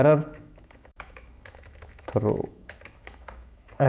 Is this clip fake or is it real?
fake